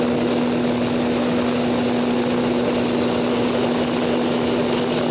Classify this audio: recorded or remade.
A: recorded